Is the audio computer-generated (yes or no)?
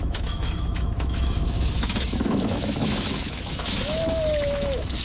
yes